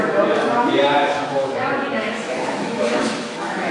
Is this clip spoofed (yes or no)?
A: yes